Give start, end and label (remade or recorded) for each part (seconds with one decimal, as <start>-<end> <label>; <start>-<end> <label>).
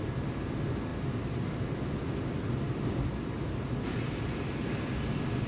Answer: 0.0-5.5 recorded